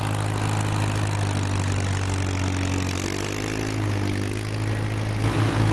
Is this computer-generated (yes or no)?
no